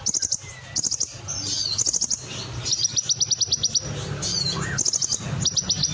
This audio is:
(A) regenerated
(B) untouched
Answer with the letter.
B